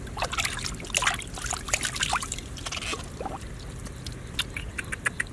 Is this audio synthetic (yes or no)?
no